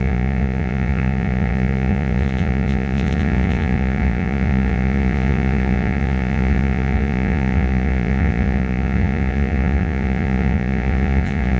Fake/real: fake